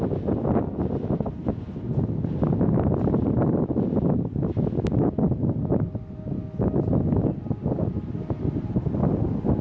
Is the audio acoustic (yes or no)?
yes